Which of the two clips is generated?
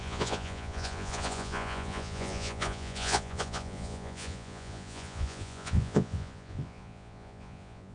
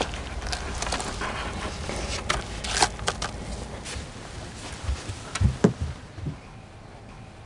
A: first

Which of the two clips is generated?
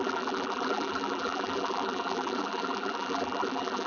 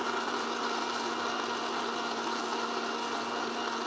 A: first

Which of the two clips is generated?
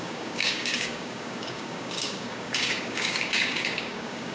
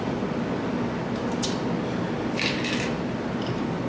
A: first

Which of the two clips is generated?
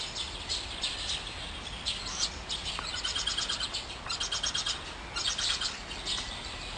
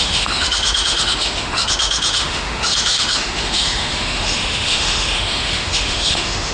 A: second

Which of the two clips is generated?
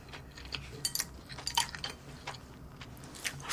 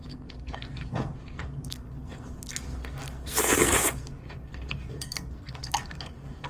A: second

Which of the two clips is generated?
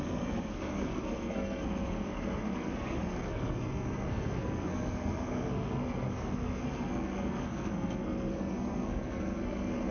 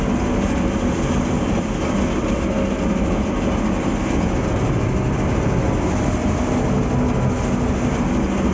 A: first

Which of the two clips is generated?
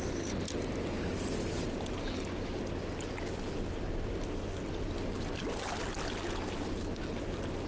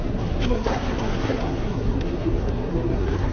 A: second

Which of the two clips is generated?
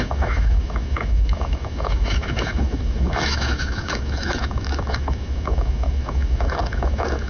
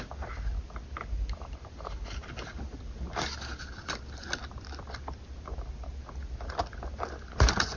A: first